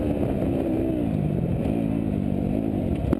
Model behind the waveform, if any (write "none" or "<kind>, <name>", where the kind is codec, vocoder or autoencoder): none